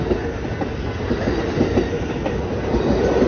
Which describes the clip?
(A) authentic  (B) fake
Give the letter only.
A